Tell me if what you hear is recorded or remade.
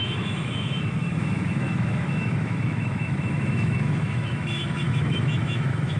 remade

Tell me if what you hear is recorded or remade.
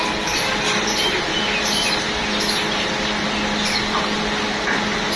recorded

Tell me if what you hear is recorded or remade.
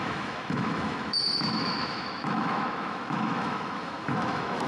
remade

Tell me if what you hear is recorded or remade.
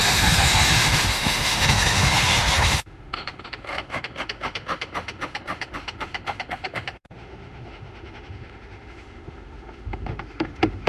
remade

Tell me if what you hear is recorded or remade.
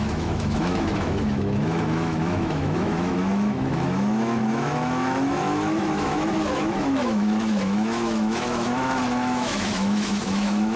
remade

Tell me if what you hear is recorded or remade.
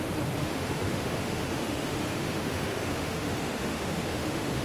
remade